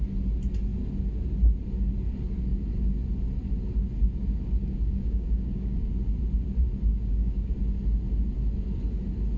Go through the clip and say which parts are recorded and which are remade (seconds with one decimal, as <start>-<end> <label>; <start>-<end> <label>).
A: 0.0-4.6 recorded; 4.6-5.9 remade; 5.9-6.9 recorded; 6.9-7.5 remade; 7.5-9.4 recorded